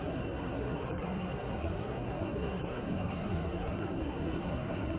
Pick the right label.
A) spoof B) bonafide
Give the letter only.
A